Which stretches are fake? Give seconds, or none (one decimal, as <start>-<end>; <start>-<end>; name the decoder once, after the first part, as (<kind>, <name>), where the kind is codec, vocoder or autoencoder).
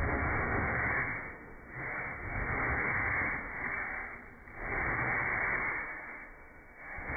0.0-3.5 (autoencoder, DAC-VAE); 5.6-7.2